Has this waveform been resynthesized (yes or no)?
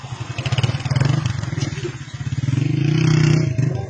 no